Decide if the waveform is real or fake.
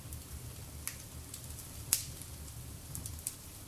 real